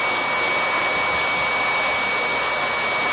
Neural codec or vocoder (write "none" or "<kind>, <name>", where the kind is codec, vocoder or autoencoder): none